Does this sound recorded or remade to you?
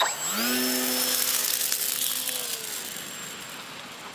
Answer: recorded